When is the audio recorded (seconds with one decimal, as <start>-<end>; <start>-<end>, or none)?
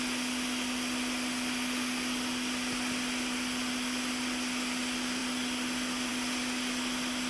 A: 0.0-7.3